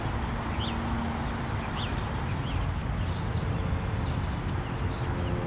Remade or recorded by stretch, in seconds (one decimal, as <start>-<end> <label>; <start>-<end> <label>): 0.0-5.5 recorded

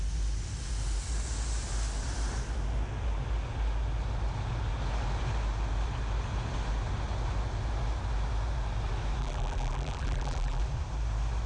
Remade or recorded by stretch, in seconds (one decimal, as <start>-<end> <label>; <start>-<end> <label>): 0.0-9.2 recorded; 9.2-10.6 remade; 10.6-11.5 recorded

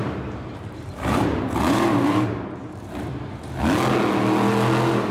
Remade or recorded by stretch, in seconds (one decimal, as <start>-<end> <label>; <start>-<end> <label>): 0.0-3.1 remade; 3.1-5.1 recorded

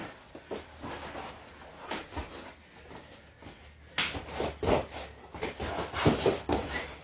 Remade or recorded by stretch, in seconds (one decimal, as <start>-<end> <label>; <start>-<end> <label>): 0.0-4.2 recorded; 4.2-7.0 remade

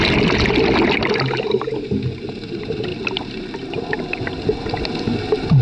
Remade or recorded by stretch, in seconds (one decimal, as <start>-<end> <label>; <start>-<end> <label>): 0.0-5.6 recorded